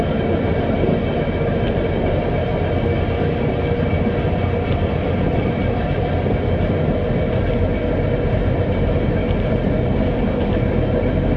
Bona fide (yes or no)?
yes